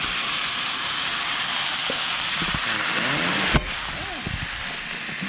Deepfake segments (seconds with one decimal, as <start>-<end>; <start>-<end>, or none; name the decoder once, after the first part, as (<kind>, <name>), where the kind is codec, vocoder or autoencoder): none